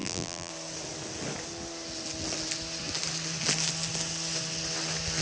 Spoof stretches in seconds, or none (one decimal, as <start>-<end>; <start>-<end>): 0.0-0.5